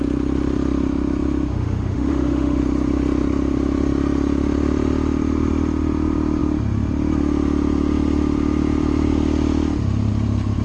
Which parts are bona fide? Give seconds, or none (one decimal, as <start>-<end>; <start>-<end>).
0.0-1.5; 2.6-10.6